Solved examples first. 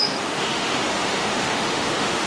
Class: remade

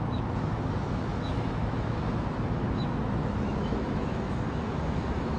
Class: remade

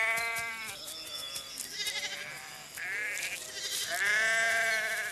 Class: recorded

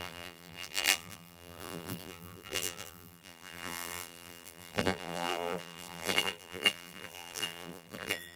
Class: remade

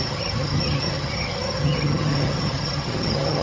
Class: remade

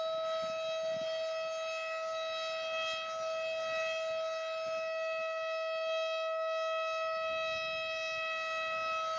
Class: recorded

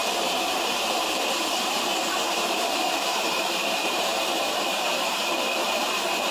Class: remade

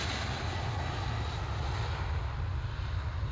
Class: recorded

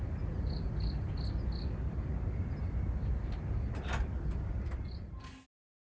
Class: recorded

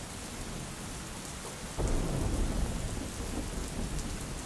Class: recorded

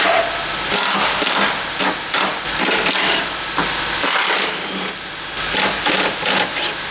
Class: recorded